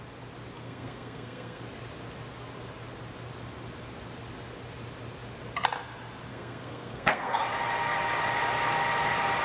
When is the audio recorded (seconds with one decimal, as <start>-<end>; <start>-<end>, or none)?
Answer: 0.0-0.6; 1.6-6.3; 7.4-9.4